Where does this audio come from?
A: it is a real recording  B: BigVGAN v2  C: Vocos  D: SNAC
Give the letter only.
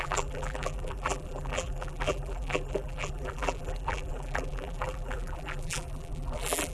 B